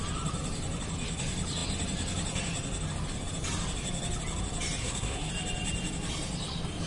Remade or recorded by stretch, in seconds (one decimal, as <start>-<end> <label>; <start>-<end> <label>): 0.0-4.8 recorded; 4.8-5.3 remade; 5.3-6.9 recorded